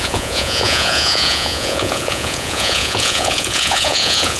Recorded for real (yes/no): no